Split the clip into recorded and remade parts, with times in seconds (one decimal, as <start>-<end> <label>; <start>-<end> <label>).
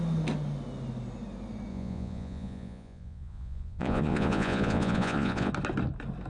0.0-1.7 recorded; 1.7-5.5 remade; 5.5-6.3 recorded